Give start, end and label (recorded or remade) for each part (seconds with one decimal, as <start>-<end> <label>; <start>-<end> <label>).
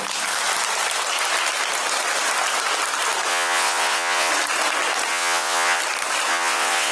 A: 0.0-3.3 recorded; 3.3-4.3 remade; 4.3-5.1 recorded; 5.1-5.8 remade; 5.8-6.3 recorded; 6.3-6.9 remade